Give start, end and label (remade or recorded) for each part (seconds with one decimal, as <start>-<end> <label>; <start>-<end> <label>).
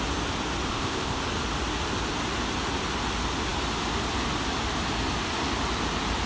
0.0-0.7 recorded; 0.7-1.2 remade; 1.2-6.3 recorded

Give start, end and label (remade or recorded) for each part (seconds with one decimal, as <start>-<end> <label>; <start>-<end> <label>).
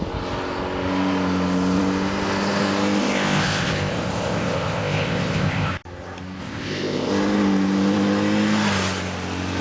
0.0-3.0 recorded; 3.0-5.7 remade; 5.7-6.4 recorded; 6.4-7.1 remade; 7.1-9.6 recorded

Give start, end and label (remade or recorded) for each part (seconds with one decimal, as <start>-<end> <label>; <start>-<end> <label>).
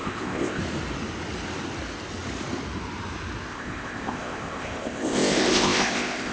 0.0-0.6 remade; 0.6-3.5 recorded; 3.5-6.3 remade